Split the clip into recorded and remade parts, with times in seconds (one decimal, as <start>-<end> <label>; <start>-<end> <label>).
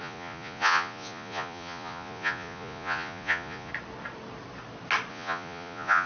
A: 0.0-3.7 remade; 3.7-5.1 recorded; 5.1-6.1 remade